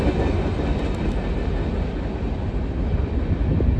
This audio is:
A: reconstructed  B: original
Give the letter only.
B